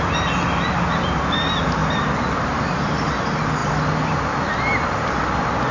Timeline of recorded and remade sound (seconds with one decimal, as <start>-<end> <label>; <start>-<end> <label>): 0.0-3.6 recorded; 3.6-5.3 remade; 5.3-5.7 recorded